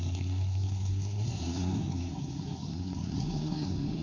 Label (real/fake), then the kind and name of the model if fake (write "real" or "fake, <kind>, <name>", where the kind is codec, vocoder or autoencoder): fake, codec, SNAC